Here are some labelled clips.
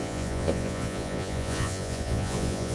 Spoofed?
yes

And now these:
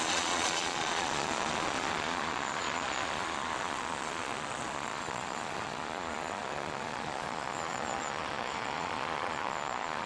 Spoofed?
yes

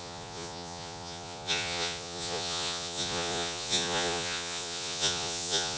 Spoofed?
yes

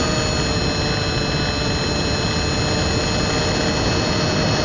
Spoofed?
no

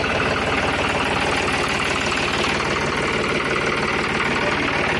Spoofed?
no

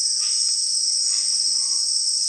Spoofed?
yes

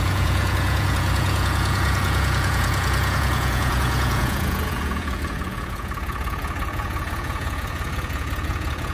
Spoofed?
yes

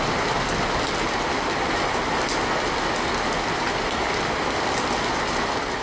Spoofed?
no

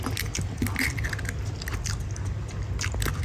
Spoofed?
no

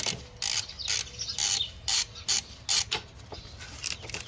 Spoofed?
no